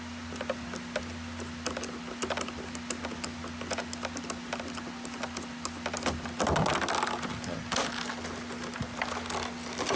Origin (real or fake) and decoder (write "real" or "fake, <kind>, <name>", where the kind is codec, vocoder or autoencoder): real